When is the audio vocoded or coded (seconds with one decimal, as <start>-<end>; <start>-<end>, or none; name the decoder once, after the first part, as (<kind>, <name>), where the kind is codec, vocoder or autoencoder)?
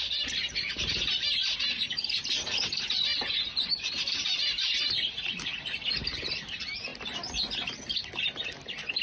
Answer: 0.0-6.9 (vocoder, BigVGAN v2); 8.2-9.0